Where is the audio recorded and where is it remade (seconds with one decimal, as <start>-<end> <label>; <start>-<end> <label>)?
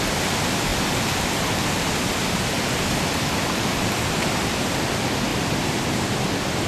0.0-5.3 recorded; 5.3-6.7 remade